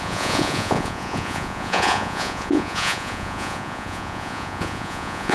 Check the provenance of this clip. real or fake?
fake